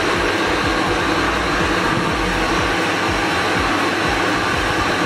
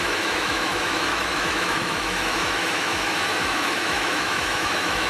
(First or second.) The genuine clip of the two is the first